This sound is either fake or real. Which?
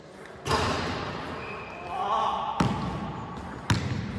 real